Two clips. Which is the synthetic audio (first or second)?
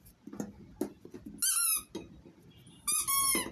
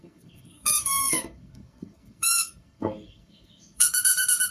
second